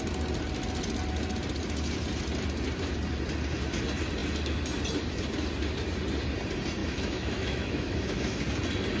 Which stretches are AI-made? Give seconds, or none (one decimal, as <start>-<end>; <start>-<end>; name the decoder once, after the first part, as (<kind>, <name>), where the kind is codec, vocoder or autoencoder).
6.8-8.4 (autoencoder, DAC-VAE)